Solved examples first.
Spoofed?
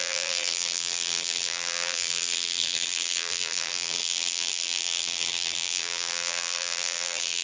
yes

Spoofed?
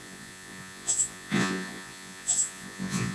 yes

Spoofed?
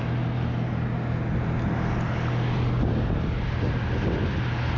no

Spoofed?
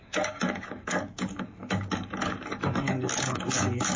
yes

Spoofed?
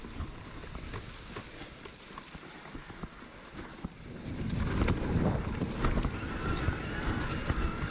no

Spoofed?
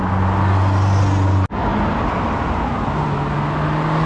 no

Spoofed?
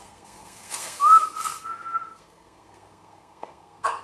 yes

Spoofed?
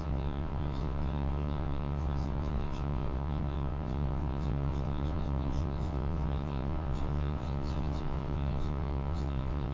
yes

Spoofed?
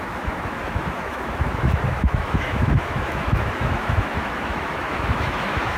yes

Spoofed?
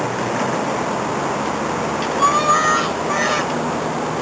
no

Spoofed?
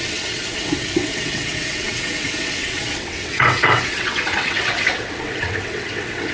yes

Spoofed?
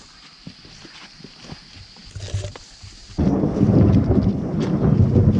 no